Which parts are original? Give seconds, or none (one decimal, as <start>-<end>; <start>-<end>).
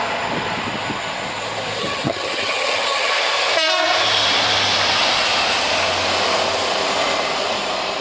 0.0-1.8; 3.1-8.0